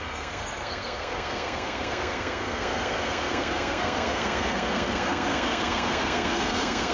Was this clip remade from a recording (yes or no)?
yes